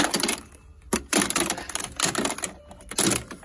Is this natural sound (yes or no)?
yes